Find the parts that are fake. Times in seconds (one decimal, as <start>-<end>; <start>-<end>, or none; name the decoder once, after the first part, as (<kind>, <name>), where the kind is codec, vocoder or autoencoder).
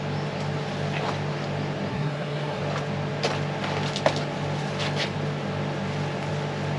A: 1.9-2.6 (codec, SNAC)